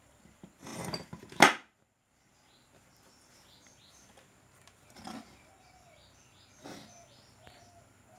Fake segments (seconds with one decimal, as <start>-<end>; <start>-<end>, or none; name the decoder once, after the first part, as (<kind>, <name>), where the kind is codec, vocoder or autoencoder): none